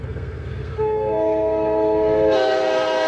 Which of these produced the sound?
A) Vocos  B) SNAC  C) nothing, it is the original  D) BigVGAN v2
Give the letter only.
B